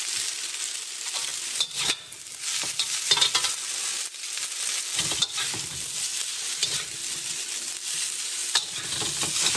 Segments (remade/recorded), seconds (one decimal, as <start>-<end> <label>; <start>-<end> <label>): 0.0-9.6 recorded